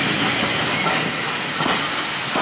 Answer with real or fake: real